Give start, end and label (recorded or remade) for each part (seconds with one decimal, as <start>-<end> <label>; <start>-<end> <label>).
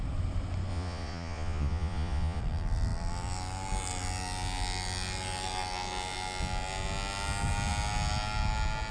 0.0-0.7 recorded; 0.7-2.4 remade; 2.4-8.9 recorded